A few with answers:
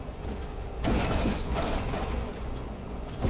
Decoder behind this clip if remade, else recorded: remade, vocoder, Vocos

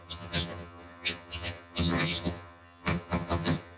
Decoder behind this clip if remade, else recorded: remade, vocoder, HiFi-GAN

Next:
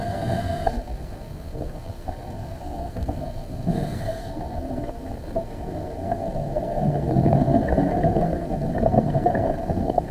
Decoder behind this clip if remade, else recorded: remade, codec, SNAC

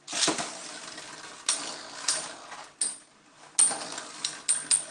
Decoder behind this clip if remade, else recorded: recorded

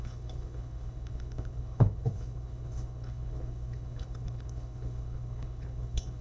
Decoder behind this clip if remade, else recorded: remade, codec, HILCodec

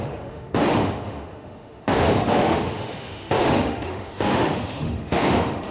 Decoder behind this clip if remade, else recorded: remade, autoencoder, DAC-VAE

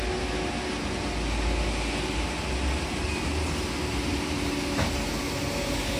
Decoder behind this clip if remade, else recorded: recorded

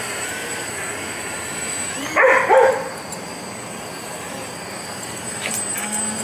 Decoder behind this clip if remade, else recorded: remade, vocoder, BigVGAN v2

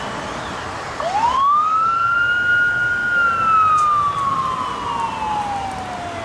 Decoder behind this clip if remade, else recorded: recorded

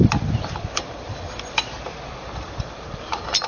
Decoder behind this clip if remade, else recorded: remade, vocoder, BigVGAN v2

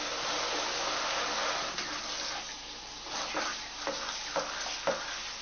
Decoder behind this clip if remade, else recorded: recorded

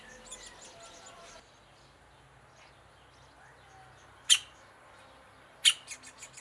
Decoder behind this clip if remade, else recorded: recorded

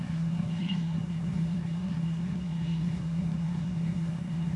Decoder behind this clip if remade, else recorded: remade, codec, SNAC